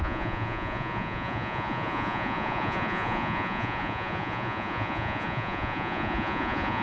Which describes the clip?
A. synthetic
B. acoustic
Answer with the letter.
A